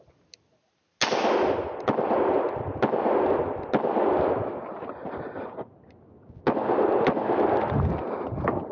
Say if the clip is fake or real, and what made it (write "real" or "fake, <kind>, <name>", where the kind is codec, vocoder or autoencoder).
real